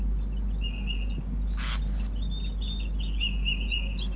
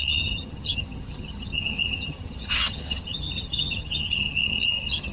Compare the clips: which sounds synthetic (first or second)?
second